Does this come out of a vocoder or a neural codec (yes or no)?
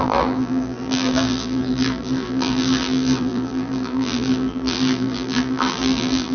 yes